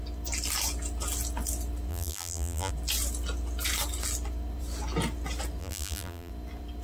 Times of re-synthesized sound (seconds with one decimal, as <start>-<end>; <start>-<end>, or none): 1.9-2.7; 5.6-6.3